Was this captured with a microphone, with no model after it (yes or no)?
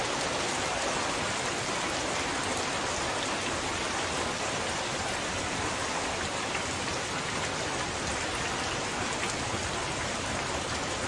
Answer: yes